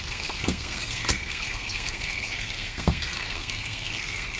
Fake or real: fake